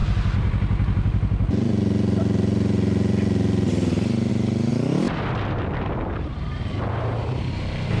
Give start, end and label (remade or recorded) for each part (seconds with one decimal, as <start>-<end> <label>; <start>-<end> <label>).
0.0-4.7 recorded; 4.7-7.5 remade; 7.5-8.0 recorded